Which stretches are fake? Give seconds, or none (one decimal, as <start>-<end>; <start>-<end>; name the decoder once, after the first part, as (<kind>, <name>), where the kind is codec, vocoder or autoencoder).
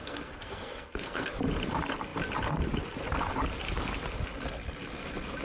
0.0-1.3 (codec, SNAC)